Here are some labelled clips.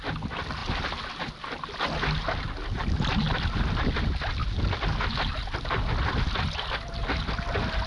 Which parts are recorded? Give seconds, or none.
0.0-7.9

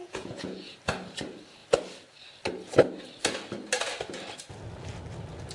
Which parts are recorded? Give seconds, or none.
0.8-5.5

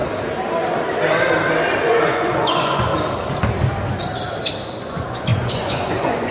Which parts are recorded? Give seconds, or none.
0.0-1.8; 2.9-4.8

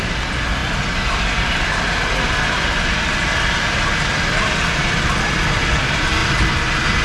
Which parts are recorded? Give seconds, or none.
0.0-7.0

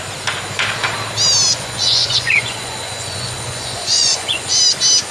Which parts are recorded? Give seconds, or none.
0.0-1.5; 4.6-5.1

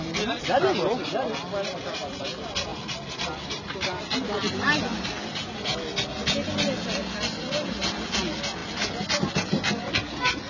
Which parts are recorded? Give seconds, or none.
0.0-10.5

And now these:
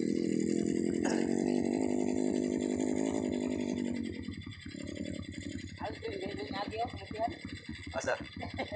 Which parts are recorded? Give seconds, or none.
0.0-7.7; 8.3-8.8